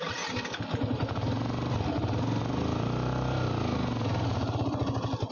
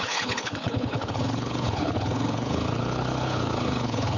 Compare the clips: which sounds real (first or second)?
first